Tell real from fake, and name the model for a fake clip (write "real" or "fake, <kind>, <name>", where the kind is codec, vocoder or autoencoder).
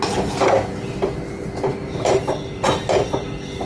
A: real